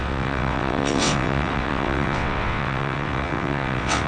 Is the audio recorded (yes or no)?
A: no